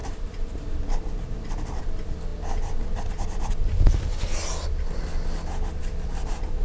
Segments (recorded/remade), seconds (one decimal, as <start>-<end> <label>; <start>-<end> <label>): 0.0-1.8 remade; 1.8-6.6 recorded